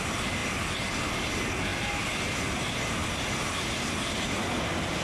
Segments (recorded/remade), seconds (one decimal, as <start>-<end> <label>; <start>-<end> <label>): 0.0-5.0 recorded